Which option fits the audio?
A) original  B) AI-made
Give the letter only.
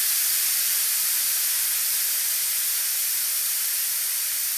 A